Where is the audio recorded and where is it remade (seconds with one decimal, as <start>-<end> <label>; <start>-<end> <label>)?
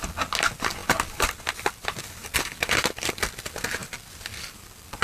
0.0-2.2 recorded; 2.2-3.4 remade; 3.4-3.8 recorded; 3.8-5.0 remade